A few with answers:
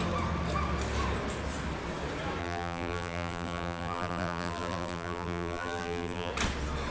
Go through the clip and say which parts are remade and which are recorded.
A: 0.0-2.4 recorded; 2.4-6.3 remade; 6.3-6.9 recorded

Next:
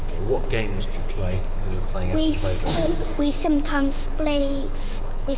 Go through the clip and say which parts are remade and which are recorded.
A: 0.0-5.4 remade

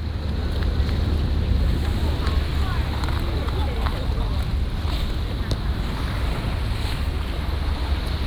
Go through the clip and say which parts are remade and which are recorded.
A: 0.0-8.3 recorded

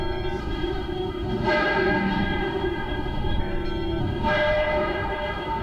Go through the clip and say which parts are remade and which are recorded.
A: 0.0-0.4 recorded; 0.4-3.4 remade; 3.4-4.0 recorded; 4.0-5.6 remade

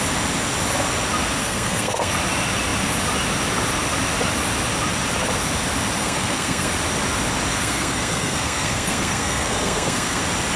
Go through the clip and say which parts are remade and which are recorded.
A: 0.0-1.4 recorded; 1.4-2.1 remade; 2.1-6.0 recorded; 6.0-6.7 remade; 6.7-7.5 recorded; 7.5-10.2 remade; 10.2-10.6 recorded

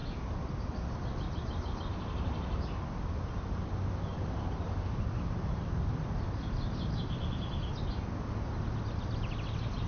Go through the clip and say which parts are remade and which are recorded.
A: 0.0-4.1 recorded; 4.1-7.5 remade; 7.5-9.9 recorded

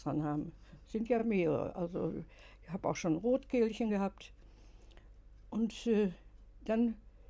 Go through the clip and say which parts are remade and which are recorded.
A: 0.0-7.3 recorded